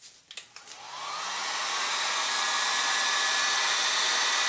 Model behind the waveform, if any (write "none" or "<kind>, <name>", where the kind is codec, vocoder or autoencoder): none